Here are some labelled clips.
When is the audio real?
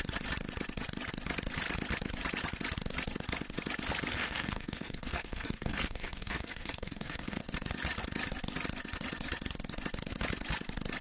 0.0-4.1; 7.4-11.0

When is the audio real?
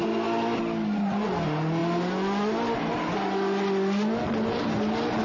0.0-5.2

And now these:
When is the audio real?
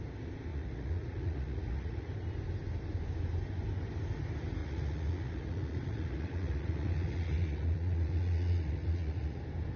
0.0-0.5; 2.1-4.6; 9.4-9.8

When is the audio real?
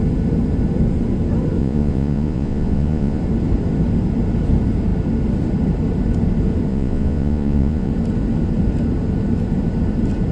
0.0-1.6; 3.2-6.7; 7.9-10.3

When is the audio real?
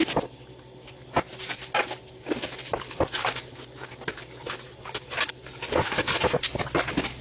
0.0-7.2